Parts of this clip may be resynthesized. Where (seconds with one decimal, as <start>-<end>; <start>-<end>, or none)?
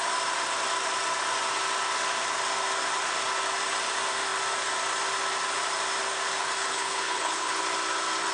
6.6-7.6